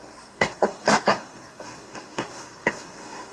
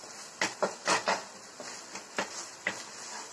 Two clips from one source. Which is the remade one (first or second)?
first